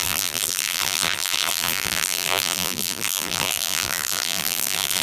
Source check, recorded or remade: remade